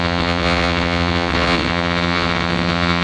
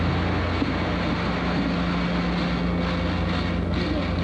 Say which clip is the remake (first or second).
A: first